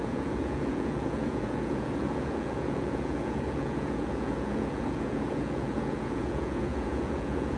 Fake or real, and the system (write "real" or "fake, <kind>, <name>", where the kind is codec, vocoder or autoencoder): fake, vocoder, Vocos